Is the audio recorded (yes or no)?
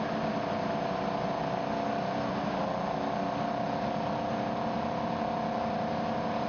yes